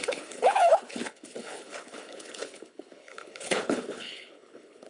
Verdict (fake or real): fake